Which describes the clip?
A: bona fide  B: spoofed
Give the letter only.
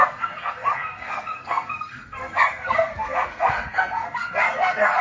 B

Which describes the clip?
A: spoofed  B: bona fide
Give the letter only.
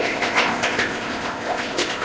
A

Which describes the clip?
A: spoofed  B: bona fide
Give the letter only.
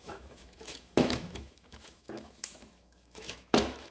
A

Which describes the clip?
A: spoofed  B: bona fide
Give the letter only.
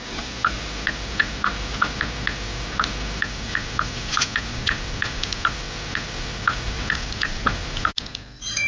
B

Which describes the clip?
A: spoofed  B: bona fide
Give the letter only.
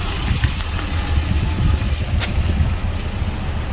B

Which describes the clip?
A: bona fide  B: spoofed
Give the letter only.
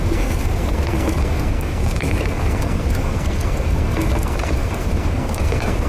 B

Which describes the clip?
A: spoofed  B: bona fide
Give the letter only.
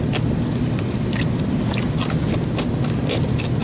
B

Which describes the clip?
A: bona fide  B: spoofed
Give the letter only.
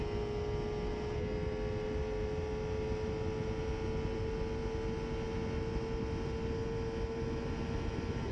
A